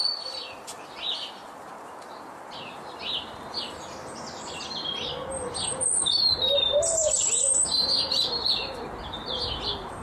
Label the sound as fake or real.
fake